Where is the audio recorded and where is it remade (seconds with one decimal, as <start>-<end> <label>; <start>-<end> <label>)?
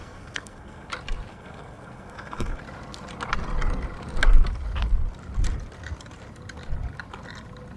0.0-0.9 remade; 0.9-1.3 recorded; 1.3-2.6 remade; 2.6-7.8 recorded